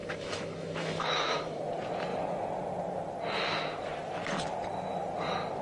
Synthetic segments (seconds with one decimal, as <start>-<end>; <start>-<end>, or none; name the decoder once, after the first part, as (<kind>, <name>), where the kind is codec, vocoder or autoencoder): 0.0-1.6 (autoencoder, DAC-VAE)